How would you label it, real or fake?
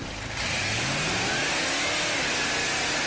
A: real